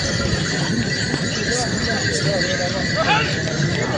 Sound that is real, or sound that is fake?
real